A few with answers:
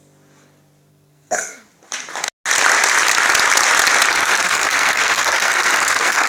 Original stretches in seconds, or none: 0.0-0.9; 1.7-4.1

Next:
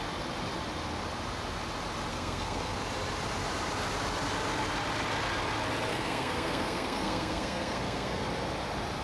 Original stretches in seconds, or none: 0.0-2.1; 2.8-5.9; 8.3-9.0

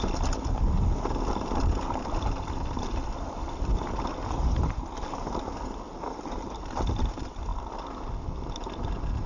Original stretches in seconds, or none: 0.0-9.3

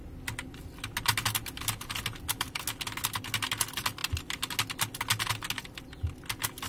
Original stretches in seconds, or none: 0.0-6.7

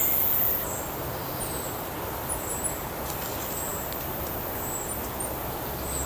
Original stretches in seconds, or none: 0.0-6.1

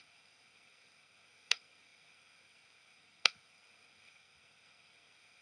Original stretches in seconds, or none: none

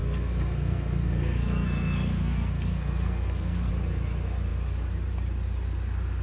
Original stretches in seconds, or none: 3.7-6.2

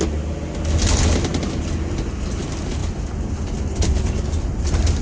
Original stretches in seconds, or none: 0.0-5.0